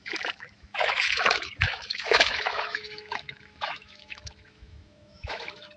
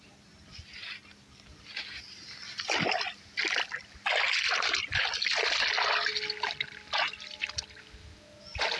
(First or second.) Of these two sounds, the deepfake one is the first